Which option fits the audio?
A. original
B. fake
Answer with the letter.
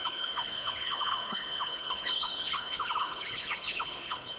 B